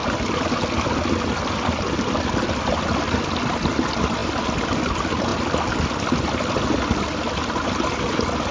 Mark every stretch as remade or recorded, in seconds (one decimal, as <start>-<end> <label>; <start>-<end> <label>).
0.0-8.5 recorded